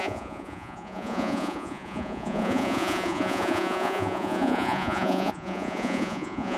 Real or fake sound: fake